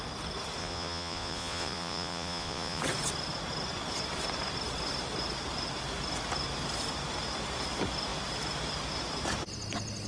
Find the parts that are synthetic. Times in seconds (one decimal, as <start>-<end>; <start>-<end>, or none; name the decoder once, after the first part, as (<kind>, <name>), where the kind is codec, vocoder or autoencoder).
0.6-2.8 (vocoder, Vocos)